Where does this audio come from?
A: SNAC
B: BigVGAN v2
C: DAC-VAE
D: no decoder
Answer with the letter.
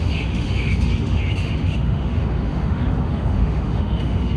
C